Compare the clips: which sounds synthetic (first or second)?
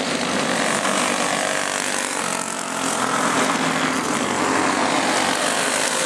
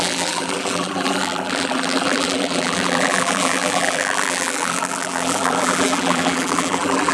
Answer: second